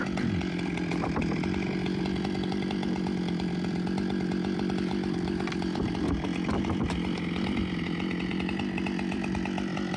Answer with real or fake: fake